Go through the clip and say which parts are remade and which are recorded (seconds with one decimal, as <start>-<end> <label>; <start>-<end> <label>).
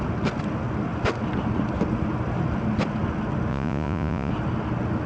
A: 0.0-3.5 recorded; 3.5-4.3 remade; 4.3-5.1 recorded